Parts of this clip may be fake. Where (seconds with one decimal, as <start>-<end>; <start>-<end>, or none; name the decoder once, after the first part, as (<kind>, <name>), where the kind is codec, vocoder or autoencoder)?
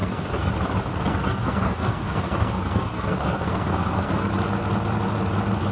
0.0-0.5 (codec, SNAC); 0.9-4.3